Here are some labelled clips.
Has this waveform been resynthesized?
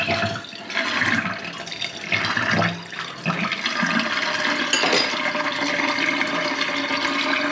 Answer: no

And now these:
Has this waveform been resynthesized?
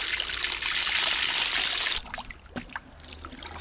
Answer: no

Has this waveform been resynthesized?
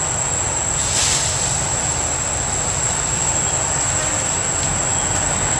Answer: no